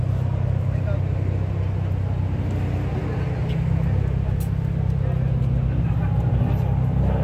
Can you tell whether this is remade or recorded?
recorded